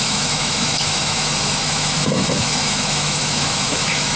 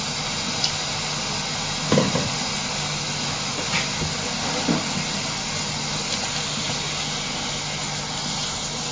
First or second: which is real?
second